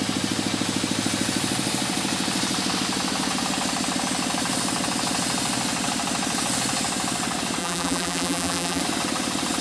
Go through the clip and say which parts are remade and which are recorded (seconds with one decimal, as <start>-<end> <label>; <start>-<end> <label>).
0.0-7.6 recorded; 7.6-8.8 remade; 8.8-9.6 recorded